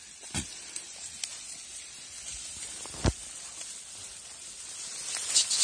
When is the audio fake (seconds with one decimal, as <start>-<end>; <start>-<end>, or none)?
none

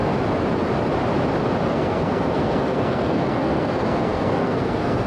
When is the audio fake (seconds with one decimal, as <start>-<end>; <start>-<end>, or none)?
1.7-5.1

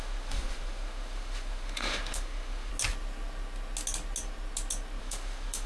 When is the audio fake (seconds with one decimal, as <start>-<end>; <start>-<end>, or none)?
0.0-2.7; 5.0-5.7

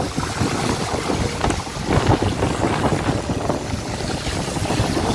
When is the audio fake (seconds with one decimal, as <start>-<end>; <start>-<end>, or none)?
none

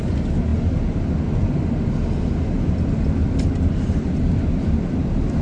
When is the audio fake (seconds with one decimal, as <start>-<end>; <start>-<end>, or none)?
none

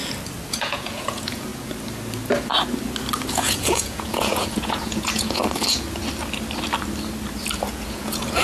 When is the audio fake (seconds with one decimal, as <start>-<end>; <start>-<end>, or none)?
0.5-1.5; 3.3-5.4; 7.6-8.4